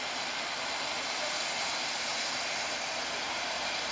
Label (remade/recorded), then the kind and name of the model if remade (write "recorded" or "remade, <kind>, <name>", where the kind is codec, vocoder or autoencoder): recorded